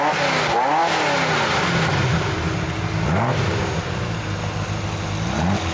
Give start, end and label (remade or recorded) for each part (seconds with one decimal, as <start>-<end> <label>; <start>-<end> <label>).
0.0-5.7 recorded